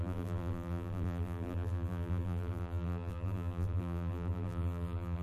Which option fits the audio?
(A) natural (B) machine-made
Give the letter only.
B